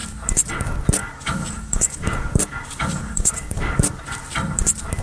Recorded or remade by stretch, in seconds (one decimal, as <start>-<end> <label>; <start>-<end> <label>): 0.0-1.0 recorded; 1.0-4.0 remade; 4.0-5.0 recorded